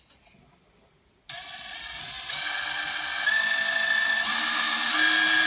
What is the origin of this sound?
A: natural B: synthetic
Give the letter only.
A